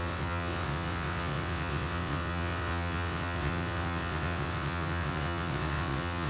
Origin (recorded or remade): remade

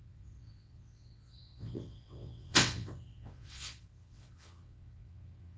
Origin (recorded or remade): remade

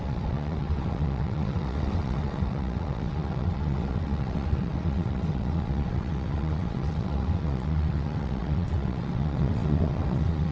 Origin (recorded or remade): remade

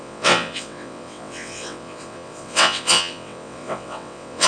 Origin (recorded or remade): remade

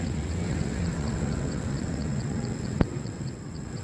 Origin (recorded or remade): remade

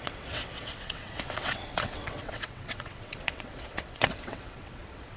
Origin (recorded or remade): remade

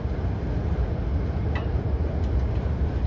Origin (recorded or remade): recorded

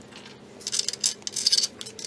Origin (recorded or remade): recorded